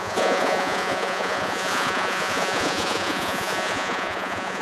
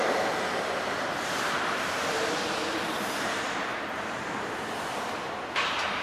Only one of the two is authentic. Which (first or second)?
second